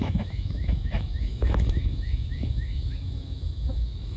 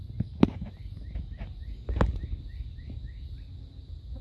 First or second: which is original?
second